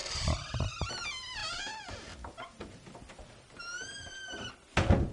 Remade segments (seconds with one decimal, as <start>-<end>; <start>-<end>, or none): none